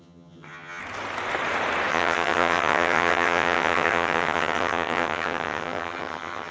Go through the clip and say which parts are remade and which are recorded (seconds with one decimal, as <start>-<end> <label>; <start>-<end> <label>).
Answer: 0.0-0.8 remade; 0.8-1.9 recorded; 1.9-6.5 remade